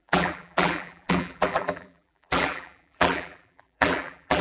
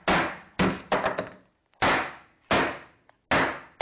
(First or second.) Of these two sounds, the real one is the second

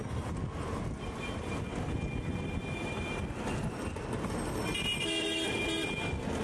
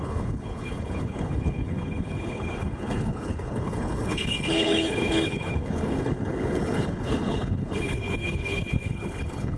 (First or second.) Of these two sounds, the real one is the first